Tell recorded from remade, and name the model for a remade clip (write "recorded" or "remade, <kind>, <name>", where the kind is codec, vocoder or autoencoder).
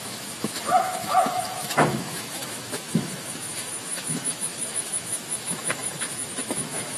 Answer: remade, autoencoder, DAC-VAE